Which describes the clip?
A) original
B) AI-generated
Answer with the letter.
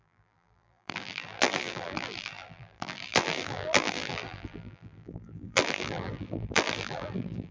B